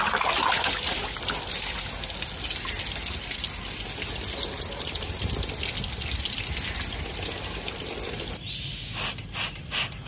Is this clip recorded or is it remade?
recorded